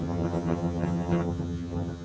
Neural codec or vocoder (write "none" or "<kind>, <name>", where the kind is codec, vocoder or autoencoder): vocoder, HiFi-GAN